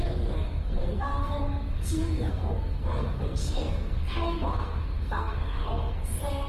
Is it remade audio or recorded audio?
remade